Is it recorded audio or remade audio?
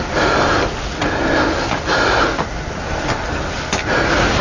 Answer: recorded